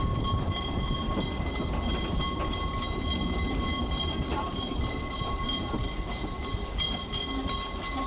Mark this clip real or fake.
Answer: real